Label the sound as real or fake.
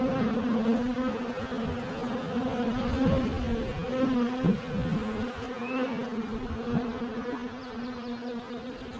real